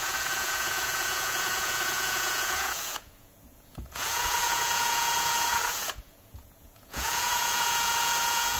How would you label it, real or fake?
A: fake